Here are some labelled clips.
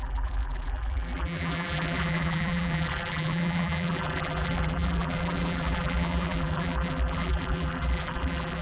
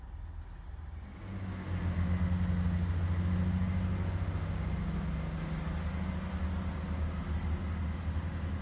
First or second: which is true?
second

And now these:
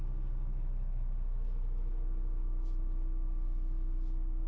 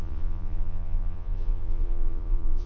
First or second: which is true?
first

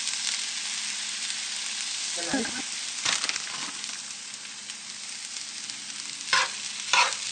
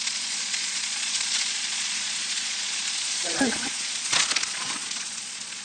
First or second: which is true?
first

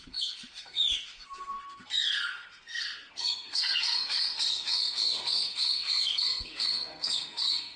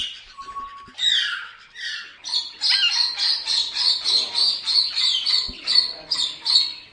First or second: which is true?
second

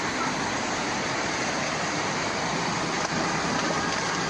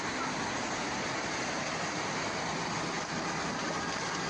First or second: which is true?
second